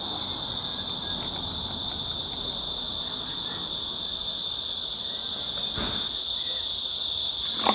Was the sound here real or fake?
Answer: real